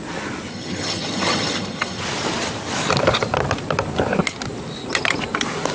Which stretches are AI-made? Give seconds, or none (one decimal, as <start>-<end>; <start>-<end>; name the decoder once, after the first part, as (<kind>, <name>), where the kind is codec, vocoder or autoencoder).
0.5-2.0 (vocoder, HiFi-GAN)